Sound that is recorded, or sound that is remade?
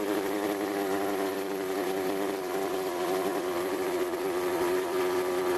remade